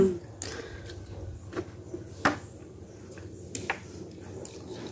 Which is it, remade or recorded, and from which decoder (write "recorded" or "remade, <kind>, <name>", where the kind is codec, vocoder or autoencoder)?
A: recorded